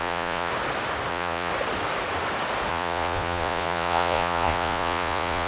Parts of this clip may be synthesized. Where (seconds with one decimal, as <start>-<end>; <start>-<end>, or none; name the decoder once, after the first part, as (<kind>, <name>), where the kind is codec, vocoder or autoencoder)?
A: 0.0-0.5 (vocoder, Vocos); 1.1-1.5; 2.7-5.5